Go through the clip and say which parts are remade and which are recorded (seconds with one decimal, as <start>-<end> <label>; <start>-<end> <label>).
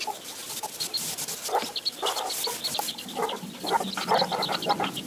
0.0-5.1 recorded